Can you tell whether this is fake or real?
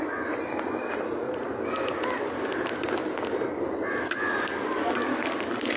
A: real